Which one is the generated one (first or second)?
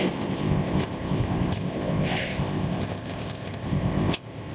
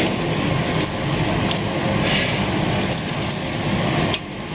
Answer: first